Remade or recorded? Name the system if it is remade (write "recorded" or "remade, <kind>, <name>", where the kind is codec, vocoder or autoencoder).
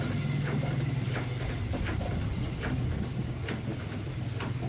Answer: recorded